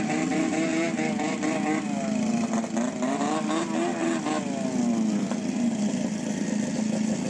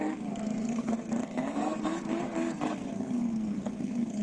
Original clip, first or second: first